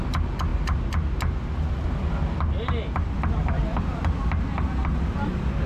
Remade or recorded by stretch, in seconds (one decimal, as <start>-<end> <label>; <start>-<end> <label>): 0.0-5.7 recorded